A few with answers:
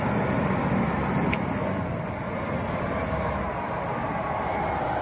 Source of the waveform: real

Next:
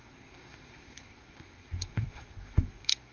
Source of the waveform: fake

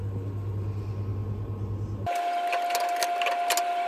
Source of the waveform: real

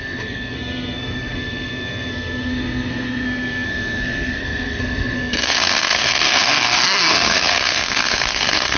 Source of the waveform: fake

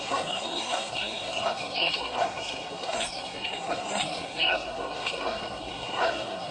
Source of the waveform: fake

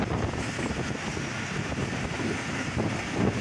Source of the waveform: real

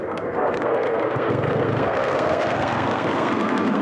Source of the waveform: fake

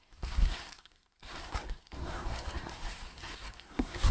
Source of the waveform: fake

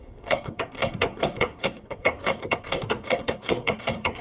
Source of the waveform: fake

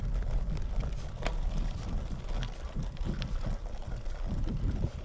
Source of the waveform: real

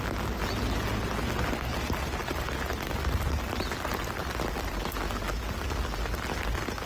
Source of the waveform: real